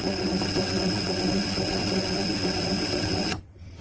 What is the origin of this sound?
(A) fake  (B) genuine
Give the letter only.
A